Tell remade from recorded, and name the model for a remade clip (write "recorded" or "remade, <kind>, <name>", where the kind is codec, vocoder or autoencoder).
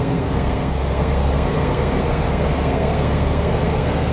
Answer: remade, codec, SNAC